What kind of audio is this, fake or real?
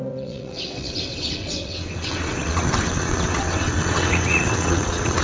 fake